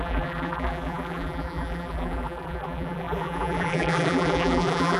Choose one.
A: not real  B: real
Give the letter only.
A